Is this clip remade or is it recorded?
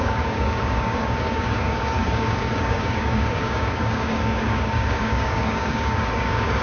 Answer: remade